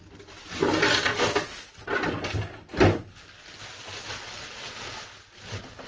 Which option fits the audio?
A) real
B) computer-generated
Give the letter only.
A